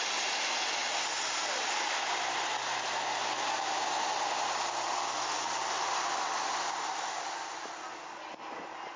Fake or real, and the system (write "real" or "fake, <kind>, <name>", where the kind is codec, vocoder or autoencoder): real